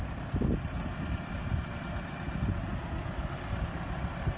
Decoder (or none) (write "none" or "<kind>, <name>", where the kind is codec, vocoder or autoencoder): none